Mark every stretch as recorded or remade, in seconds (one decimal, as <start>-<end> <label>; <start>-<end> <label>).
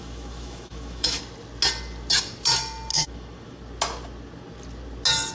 0.0-1.2 remade; 1.2-2.9 recorded; 2.9-3.6 remade; 3.6-5.3 recorded